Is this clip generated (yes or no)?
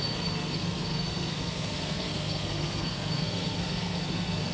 yes